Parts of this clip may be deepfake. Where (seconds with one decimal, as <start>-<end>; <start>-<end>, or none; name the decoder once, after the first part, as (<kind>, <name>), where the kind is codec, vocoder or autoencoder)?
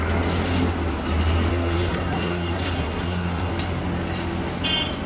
1.5-3.5 (codec, SNAC)